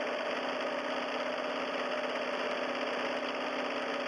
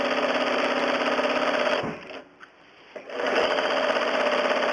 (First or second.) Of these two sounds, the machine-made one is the second